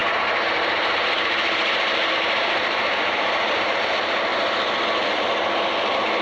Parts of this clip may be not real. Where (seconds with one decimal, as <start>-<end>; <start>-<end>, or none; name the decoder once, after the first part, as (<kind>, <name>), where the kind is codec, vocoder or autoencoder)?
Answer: 0.0-3.7 (vocoder, BigVGAN v2)